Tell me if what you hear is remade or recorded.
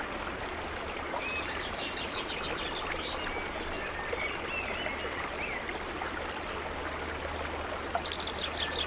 recorded